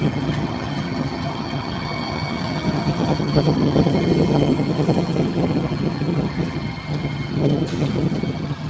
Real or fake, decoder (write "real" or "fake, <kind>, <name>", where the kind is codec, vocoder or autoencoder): fake, vocoder, HiFi-GAN